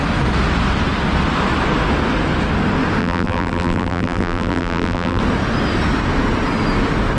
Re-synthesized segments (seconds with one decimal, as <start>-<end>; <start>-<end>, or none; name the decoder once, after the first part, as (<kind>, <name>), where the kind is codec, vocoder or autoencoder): 3.0-5.2 (vocoder, BigVGAN v2)